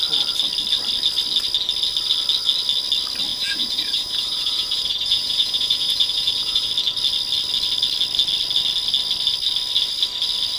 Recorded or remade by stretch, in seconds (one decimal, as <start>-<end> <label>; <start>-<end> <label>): 0.0-3.3 recorded; 3.3-6.7 remade; 6.7-10.6 recorded